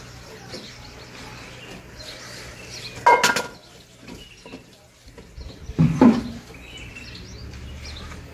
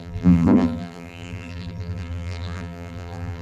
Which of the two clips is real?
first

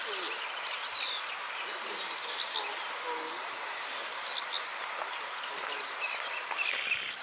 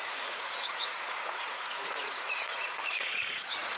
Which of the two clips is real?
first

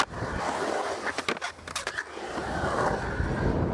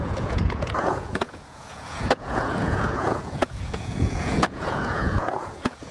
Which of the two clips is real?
first